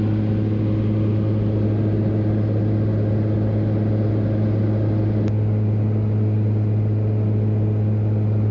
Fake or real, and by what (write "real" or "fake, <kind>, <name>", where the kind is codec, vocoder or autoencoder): real